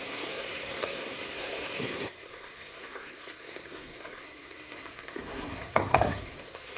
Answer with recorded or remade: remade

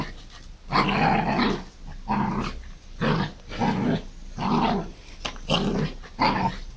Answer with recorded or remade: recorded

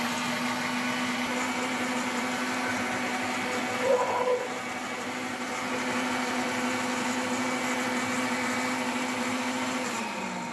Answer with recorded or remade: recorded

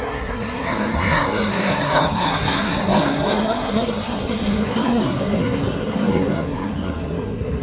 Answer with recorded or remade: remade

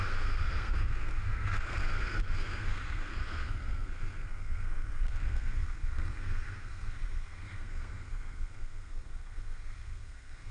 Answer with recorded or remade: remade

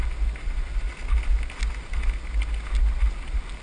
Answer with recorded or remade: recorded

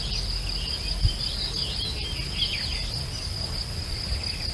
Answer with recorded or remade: recorded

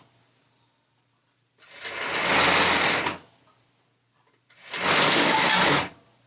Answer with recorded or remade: recorded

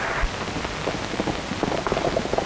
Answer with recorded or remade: recorded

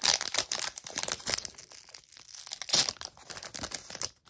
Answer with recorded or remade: recorded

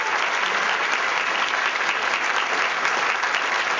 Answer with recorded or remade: recorded